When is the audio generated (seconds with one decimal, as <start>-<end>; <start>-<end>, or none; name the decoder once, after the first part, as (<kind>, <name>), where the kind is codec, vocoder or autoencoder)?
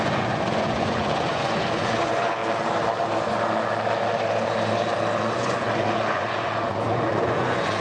0.0-2.4 (vocoder, Vocos); 5.2-7.8